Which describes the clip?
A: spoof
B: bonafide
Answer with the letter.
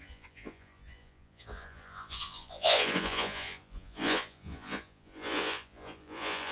A